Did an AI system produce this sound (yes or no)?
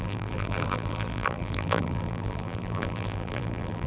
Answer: yes